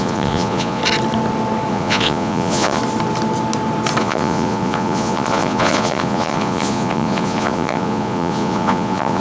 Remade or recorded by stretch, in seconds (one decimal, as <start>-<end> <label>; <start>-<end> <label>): 0.0-0.8 remade; 0.8-1.7 recorded; 1.7-2.8 remade; 2.8-4.0 recorded; 4.0-9.2 remade